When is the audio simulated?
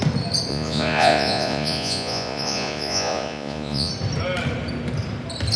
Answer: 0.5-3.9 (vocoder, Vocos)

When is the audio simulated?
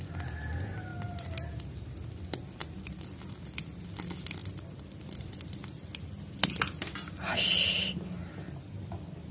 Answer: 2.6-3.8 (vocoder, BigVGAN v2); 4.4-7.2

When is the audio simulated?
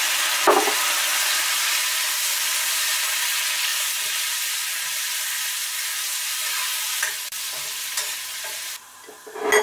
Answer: 1.1-3.0 (vocoder, BigVGAN v2); 3.7-8.6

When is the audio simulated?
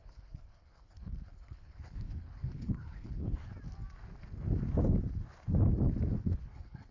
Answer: 0.0-3.5 (codec, HILCodec); 6.2-6.9